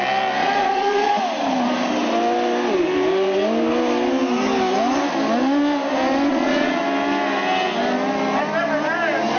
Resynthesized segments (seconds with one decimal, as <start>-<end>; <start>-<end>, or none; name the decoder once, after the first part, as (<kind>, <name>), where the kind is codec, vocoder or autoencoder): 0.4-1.1 (vocoder, Vocos); 6.3-6.8